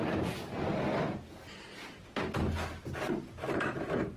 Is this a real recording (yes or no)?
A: yes